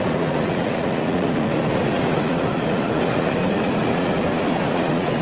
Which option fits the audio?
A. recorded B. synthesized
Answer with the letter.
B